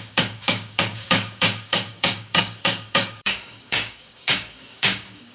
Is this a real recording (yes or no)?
no